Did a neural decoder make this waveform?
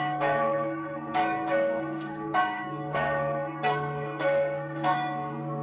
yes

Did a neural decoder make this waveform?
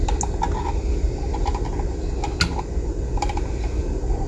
no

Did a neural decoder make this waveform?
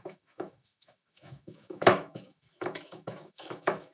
yes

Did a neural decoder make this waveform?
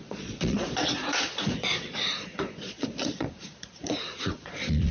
yes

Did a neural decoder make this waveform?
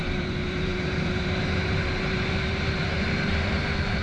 yes